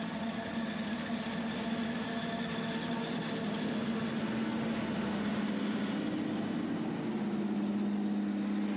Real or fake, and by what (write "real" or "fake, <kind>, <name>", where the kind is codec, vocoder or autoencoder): real